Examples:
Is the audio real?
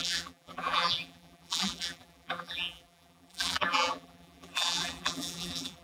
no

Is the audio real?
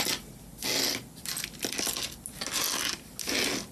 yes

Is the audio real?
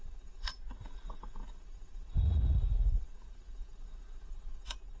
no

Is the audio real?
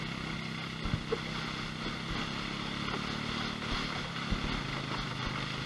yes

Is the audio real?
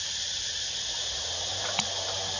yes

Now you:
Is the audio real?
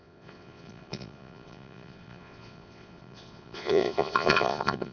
no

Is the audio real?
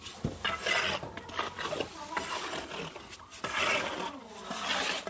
yes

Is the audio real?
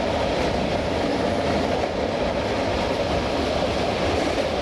yes